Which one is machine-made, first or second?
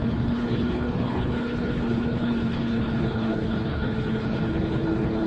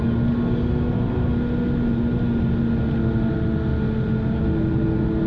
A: first